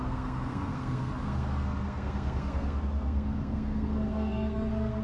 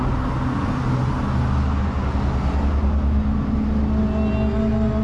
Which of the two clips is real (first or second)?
second